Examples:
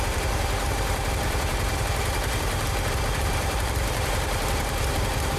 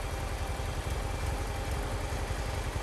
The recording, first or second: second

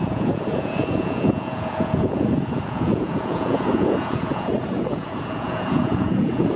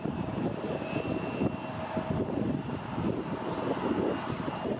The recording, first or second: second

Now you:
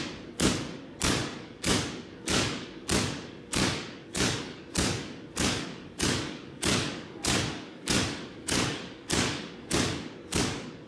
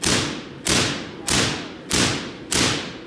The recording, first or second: second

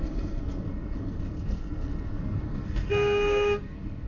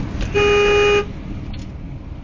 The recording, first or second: second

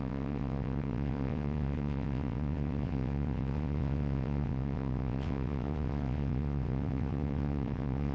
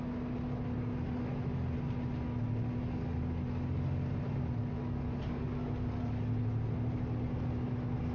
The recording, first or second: second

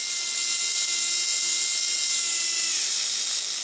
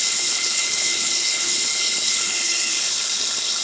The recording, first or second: first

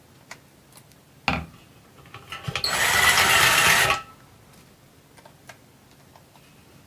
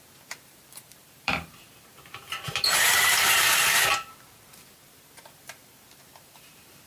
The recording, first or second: first